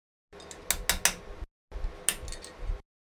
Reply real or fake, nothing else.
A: real